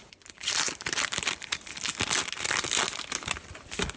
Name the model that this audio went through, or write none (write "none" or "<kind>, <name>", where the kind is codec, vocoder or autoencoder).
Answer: none